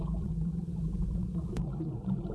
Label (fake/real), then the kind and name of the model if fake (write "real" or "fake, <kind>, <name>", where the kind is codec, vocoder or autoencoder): fake, vocoder, Vocos